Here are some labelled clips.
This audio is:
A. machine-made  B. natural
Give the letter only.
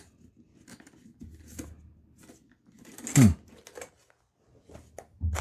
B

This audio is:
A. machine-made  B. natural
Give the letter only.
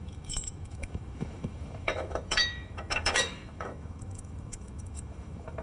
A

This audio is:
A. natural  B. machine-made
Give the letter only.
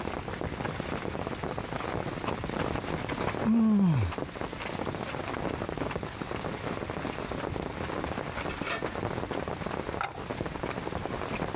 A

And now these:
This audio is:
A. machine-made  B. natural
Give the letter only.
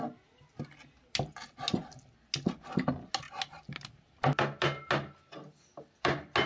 B